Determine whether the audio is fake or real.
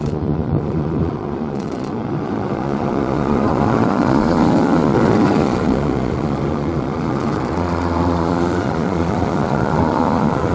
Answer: fake